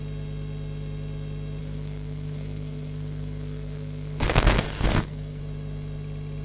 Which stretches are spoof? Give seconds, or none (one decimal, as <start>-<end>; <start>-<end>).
1.6-5.4